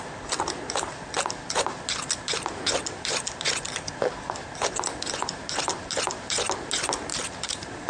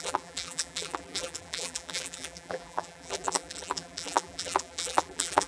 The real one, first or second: first